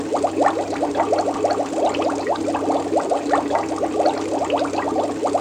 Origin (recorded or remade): recorded